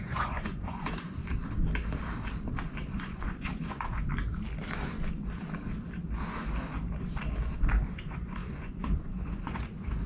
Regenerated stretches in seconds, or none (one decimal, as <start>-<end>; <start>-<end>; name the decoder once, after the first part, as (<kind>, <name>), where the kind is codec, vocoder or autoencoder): 0.0-1.2 (vocoder, Vocos); 2.9-4.1; 7.9-10.1